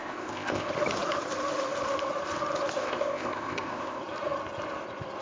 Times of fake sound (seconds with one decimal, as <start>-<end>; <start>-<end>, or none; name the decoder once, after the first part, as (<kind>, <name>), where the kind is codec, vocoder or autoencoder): 0.0-0.7 (codec, ZipCodec); 2.8-4.0